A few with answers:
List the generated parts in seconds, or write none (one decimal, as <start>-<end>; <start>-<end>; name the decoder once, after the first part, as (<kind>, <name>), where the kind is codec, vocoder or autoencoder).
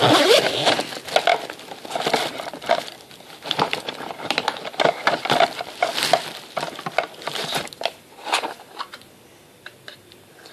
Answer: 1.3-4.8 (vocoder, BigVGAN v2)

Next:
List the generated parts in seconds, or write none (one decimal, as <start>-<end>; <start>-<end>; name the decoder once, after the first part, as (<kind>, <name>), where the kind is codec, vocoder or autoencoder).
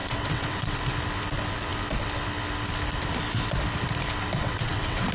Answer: 0.0-0.8 (vocoder, WaveNeXt); 4.4-5.1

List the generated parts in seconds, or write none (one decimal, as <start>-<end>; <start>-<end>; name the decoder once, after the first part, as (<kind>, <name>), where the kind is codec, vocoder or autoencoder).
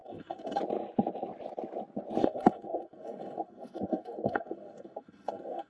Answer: 0.0-0.6 (codec, SNAC); 2.2-5.7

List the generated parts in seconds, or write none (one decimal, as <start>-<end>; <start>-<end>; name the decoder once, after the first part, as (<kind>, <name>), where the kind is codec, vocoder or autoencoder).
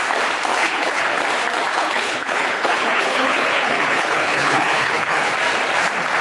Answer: 0.5-1.0 (codec, HILCodec); 1.7-5.3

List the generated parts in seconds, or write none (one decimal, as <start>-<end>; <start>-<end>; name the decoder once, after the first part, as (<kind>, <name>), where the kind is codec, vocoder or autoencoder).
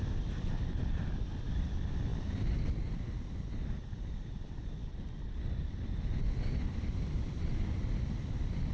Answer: none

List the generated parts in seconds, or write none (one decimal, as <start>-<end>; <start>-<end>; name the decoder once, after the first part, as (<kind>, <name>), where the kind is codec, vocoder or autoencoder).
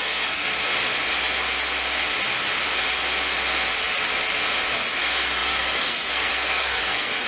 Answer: 0.0-0.7 (codec, SNAC); 5.0-7.3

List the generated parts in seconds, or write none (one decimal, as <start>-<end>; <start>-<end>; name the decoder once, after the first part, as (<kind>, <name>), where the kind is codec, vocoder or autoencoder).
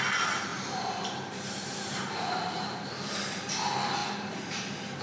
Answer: 0.5-3.3 (vocoder, BigVGAN v2); 4.0-5.0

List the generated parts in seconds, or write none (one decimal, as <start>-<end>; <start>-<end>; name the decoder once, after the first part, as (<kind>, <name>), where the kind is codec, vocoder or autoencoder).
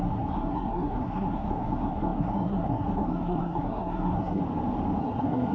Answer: 0.0-4.4 (codec, SNAC); 5.0-5.5